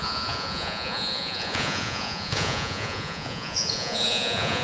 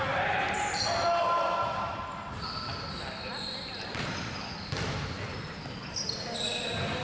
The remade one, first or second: first